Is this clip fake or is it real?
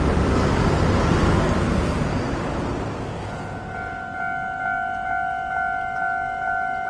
real